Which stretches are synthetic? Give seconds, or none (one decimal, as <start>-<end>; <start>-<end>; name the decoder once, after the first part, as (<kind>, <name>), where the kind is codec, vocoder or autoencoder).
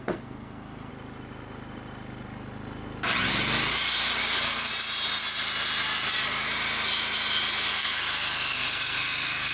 0.0-0.9 (codec, SNAC); 4.2-4.7; 7.7-9.5